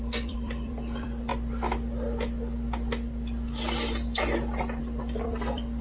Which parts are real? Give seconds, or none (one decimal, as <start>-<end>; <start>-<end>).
1.3-4.8

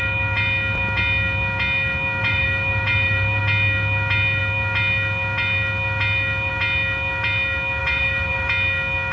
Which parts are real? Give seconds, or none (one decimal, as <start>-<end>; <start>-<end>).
0.0-2.2; 3.4-7.8; 8.5-9.1